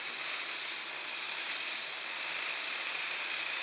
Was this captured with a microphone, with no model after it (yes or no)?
no